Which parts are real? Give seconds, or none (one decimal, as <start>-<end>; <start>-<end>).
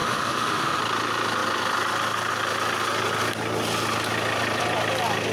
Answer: 0.8-5.3